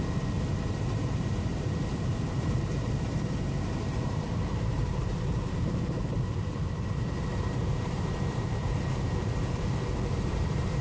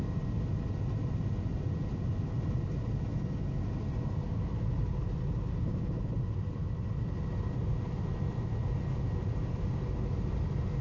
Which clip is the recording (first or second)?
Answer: second